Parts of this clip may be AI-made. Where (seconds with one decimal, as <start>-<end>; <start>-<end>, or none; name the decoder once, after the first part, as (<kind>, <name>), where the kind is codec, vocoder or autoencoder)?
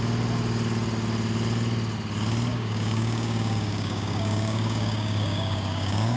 2.5-6.2 (codec, DAC)